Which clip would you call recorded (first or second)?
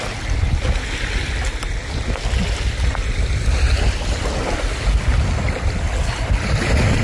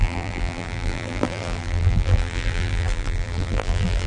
first